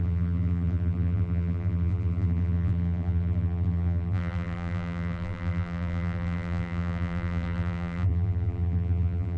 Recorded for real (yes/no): no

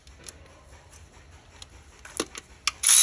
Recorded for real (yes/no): yes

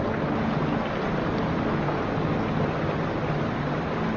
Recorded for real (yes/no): yes